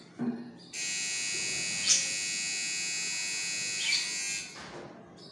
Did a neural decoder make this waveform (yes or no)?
no